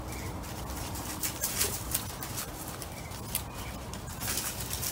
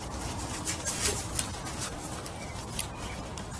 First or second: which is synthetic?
second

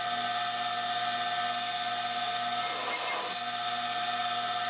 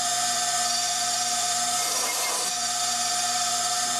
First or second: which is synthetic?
second